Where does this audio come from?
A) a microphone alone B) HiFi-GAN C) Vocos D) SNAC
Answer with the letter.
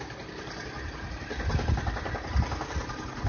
A